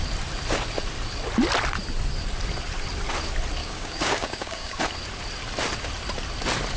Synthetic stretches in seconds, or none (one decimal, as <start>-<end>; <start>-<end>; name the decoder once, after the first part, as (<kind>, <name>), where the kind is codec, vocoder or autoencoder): 3.6-4.8 (codec, DAC)